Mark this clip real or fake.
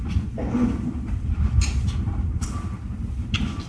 real